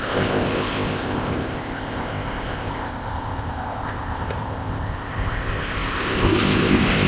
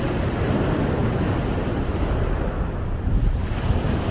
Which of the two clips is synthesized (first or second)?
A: first